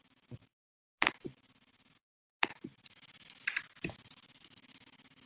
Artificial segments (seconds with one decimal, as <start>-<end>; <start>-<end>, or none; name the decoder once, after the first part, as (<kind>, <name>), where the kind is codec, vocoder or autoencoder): none